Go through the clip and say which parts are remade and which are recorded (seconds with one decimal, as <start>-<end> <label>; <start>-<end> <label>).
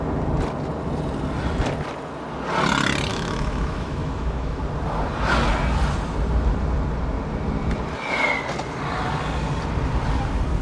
0.0-3.1 recorded; 3.1-4.6 remade; 4.6-10.6 recorded